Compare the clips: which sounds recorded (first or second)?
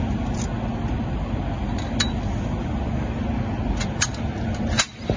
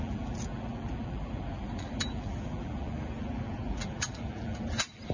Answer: first